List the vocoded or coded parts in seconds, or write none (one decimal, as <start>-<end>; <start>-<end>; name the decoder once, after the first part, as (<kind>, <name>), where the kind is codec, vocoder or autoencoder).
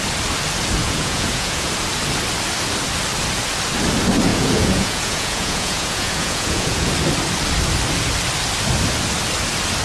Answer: 0.8-1.7 (vocoder, Vocos); 4.3-6.9